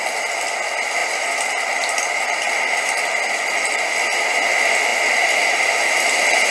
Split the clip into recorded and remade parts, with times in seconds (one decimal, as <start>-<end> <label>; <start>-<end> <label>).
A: 0.0-6.5 recorded

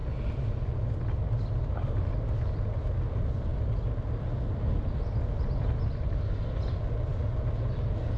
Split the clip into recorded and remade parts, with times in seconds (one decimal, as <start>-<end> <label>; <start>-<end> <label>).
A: 0.0-8.2 recorded

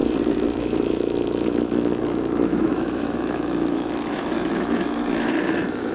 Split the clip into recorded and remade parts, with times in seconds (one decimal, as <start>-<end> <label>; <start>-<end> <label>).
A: 0.0-0.6 recorded; 0.6-5.9 remade

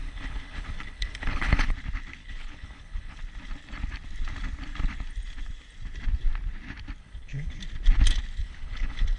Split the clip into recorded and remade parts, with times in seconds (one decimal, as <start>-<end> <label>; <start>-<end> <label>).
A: 0.0-1.7 remade; 1.7-2.2 recorded; 2.2-3.2 remade; 3.2-7.0 recorded; 7.0-7.6 remade; 7.6-8.4 recorded; 8.4-9.2 remade

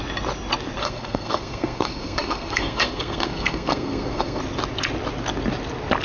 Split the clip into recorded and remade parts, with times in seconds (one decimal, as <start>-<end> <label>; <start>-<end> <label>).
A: 0.0-0.8 recorded; 0.8-4.4 remade; 4.4-6.0 recorded

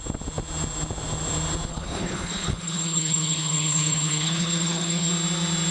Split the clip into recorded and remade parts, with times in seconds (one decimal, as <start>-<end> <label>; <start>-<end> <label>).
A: 0.0-1.7 recorded; 1.7-5.1 remade; 5.1-5.7 recorded

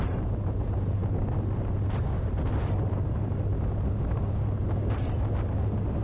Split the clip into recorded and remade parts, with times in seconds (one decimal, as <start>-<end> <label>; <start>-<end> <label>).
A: 0.0-6.0 recorded

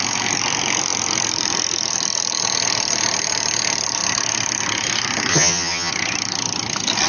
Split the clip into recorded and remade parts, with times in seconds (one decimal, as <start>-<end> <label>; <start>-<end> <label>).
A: 0.0-5.3 recorded; 5.3-5.9 remade; 5.9-7.1 recorded